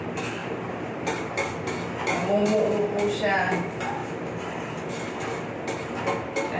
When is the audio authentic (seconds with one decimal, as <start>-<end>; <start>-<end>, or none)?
0.0-0.4; 1.3-4.0; 4.9-6.6